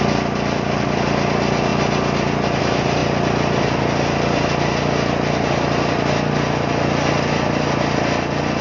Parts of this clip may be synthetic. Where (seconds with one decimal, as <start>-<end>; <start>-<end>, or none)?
none